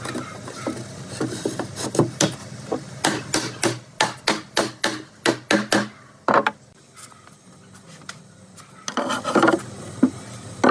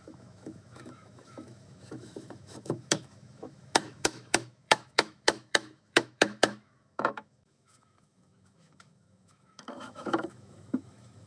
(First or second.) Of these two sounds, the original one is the first